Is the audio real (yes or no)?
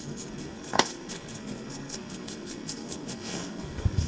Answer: no